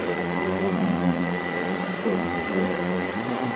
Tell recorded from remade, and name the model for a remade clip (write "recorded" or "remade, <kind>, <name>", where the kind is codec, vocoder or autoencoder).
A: remade, vocoder, Vocos